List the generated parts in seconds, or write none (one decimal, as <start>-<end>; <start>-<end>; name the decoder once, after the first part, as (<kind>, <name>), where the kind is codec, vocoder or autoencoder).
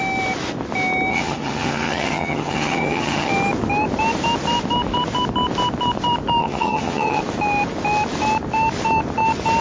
1.1-3.3 (vocoder, HiFi-GAN); 6.4-7.2